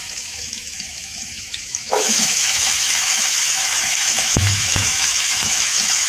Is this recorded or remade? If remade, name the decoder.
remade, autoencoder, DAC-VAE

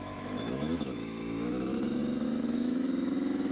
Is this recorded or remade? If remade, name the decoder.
remade, autoencoder, DAC-VAE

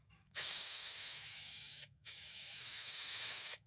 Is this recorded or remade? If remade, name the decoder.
remade, autoencoder, DAC-VAE